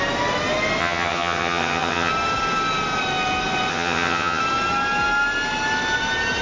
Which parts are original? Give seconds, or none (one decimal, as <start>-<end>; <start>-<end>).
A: 0.0-0.8; 2.1-3.7; 4.4-6.4